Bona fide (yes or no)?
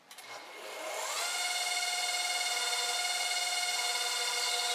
yes